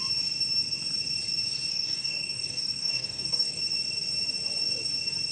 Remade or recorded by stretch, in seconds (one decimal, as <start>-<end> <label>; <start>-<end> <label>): 0.0-1.7 recorded; 1.7-3.6 remade; 3.6-5.3 recorded